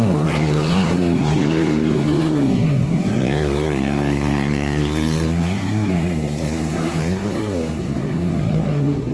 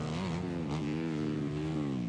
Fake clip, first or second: first